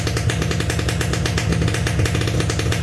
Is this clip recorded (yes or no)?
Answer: yes